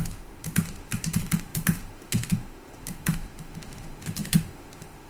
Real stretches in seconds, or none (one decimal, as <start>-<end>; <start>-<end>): none